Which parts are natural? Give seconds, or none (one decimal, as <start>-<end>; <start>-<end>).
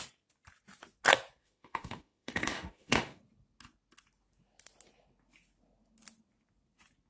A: 0.0-1.4; 3.2-7.1